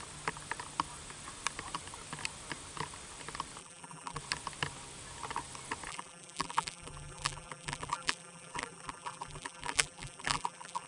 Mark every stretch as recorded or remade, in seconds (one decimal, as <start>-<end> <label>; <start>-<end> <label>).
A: 0.0-3.6 recorded; 3.6-4.2 remade; 4.2-5.9 recorded; 5.9-10.9 remade